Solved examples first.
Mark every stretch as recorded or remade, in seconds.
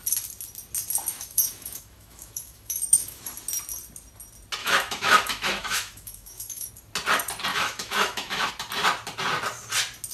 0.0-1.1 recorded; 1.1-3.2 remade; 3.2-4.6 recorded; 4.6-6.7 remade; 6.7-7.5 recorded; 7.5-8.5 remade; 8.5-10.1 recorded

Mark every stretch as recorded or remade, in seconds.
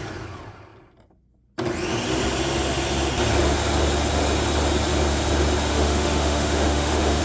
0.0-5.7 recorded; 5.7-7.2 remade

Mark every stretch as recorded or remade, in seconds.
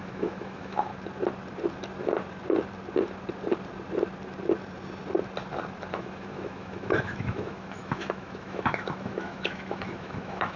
0.0-0.9 remade; 0.9-5.9 recorded; 5.9-10.6 remade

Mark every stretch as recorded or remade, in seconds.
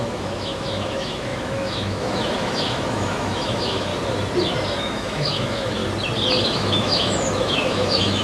0.0-3.9 remade; 3.9-4.8 recorded; 4.8-5.8 remade; 5.8-6.4 recorded; 6.4-8.2 remade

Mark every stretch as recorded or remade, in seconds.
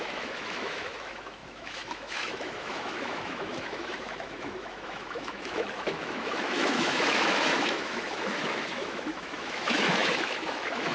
0.0-10.9 remade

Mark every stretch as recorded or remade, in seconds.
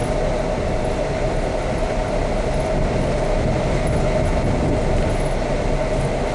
0.0-6.3 recorded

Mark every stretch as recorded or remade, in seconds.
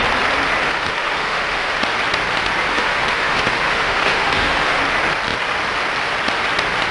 0.0-0.6 recorded; 0.6-1.8 remade; 1.8-2.7 recorded; 2.7-4.8 remade; 4.8-6.9 recorded